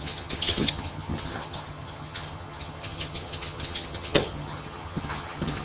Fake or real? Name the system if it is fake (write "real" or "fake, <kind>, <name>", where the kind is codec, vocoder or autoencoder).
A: fake, vocoder, HiFi-GAN